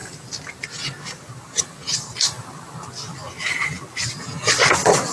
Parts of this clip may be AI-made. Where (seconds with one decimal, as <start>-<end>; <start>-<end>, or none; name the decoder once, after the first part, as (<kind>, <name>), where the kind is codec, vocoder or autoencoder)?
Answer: none